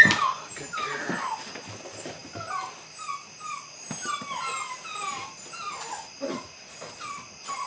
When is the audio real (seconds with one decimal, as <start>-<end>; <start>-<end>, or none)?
0.0-7.7